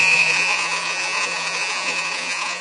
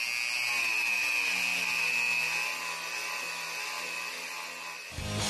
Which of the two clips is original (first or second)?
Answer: second